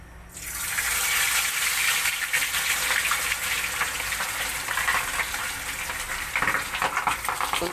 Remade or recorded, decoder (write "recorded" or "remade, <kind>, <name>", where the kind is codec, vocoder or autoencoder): recorded